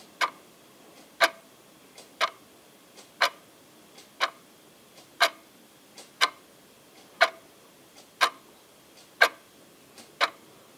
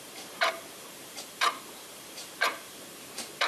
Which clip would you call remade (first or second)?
second